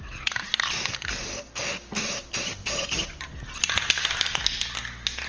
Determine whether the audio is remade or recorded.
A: recorded